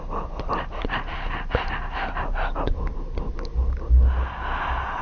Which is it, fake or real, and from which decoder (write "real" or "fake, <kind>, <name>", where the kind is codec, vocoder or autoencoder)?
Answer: real